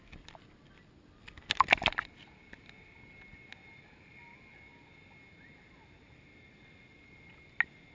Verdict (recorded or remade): recorded